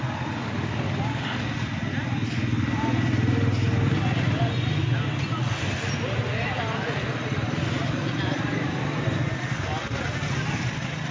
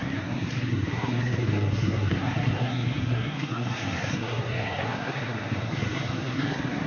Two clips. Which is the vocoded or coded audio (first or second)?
second